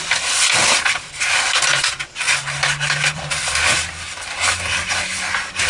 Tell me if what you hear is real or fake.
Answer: fake